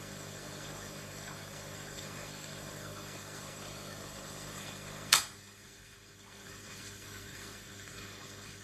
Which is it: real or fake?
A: fake